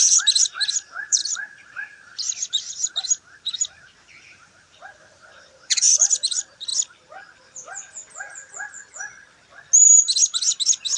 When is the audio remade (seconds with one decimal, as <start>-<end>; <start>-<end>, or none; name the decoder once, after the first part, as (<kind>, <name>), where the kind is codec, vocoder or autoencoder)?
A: 0.0-6.7 (vocoder, BigVGAN v2)